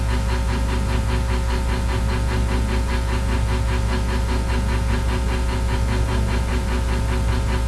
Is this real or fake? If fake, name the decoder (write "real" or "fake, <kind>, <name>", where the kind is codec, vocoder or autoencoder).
real